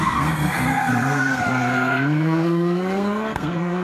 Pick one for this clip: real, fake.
fake